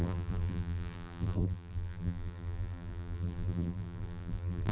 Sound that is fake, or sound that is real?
fake